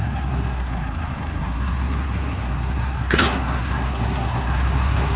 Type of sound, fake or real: fake